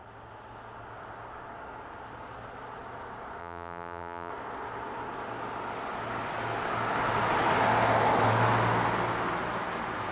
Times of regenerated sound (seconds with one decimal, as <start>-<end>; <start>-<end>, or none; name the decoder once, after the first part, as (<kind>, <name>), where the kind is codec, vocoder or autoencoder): 3.4-4.3 (vocoder, BigVGAN v2)